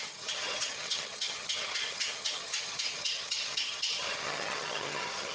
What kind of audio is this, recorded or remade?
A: remade